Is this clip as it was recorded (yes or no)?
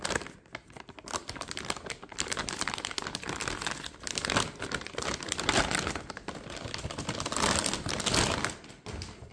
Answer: yes